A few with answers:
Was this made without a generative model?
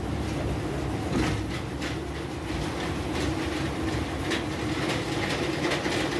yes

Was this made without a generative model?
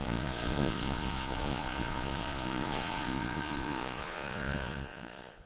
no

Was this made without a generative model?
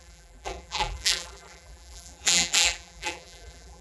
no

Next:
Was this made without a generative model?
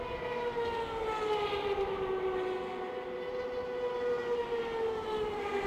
yes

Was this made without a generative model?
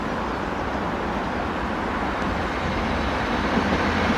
yes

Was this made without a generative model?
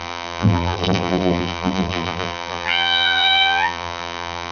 no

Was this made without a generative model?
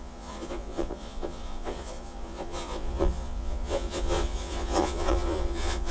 no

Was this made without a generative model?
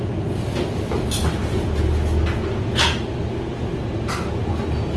yes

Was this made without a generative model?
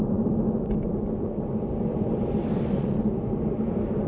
yes